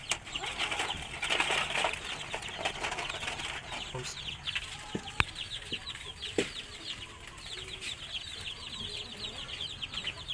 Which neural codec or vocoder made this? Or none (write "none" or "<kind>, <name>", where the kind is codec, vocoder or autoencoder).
none